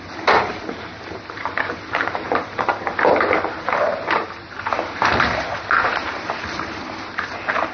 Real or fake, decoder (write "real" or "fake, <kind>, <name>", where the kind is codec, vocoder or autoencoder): fake, vocoder, BigVGAN v2